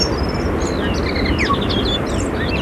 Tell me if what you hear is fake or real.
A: real